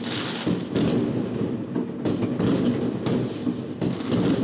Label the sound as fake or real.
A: real